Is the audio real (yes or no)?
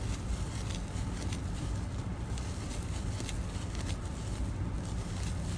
yes